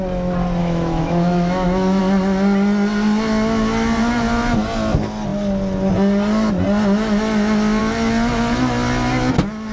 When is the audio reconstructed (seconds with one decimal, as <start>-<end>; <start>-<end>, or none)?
0.6-2.0